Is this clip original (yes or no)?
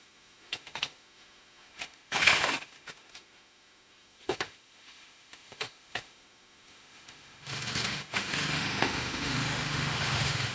no